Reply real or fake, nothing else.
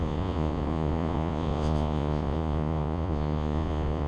fake